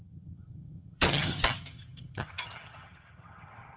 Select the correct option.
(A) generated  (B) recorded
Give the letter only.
A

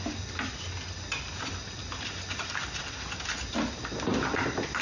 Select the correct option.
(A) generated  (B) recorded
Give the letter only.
B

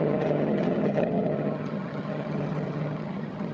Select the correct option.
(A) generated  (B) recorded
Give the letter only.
A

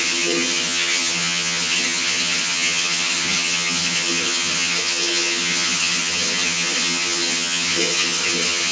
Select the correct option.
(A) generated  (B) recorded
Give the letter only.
A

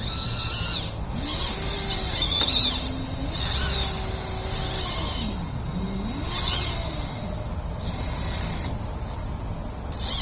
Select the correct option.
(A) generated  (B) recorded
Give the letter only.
B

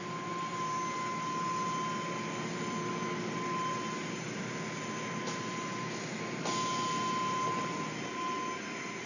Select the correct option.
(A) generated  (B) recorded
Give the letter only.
B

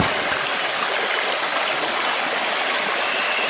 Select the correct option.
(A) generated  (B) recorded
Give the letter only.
B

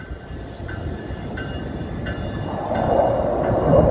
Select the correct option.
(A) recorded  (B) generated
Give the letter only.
A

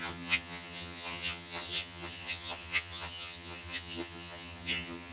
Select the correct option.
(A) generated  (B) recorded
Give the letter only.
A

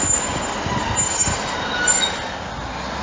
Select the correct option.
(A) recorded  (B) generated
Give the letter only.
A